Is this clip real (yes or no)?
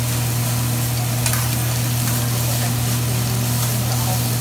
yes